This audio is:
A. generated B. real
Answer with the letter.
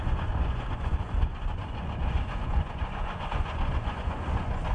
A